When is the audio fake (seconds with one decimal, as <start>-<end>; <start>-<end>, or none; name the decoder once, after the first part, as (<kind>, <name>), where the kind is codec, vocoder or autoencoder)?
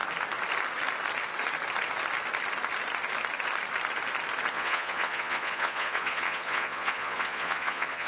4.5-8.1 (vocoder, Vocos)